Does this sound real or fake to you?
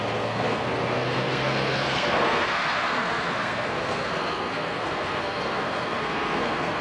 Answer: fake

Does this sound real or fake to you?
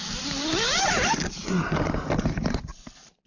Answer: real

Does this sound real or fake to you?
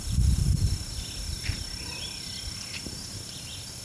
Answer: real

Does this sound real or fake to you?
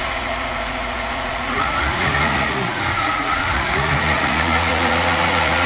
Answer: fake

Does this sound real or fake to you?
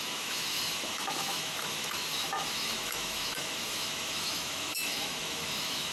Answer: fake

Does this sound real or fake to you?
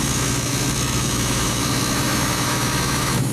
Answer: fake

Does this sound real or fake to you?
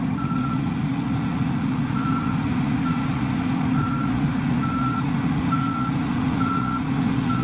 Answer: fake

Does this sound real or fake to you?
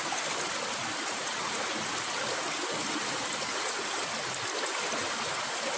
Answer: real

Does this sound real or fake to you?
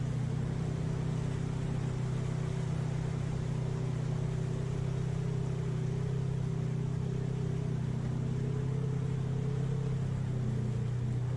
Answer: real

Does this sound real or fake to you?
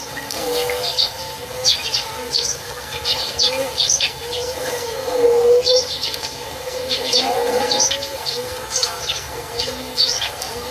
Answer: fake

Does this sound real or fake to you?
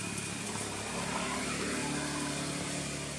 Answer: real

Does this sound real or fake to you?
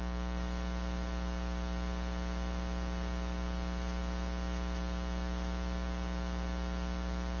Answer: real